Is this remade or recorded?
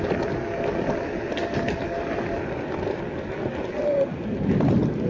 recorded